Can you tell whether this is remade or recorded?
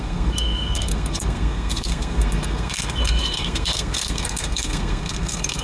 remade